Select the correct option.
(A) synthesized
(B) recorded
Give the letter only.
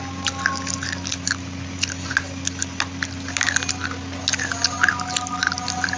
B